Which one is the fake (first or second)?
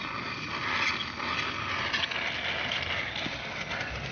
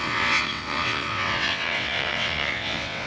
second